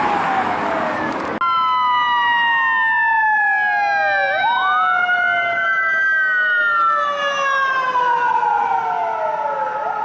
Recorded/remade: recorded